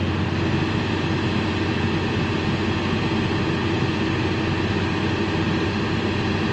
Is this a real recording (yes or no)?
yes